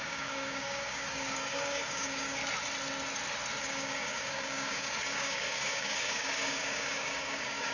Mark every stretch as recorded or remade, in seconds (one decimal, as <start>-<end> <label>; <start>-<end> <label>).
0.0-2.4 remade; 2.4-3.6 recorded; 3.6-7.7 remade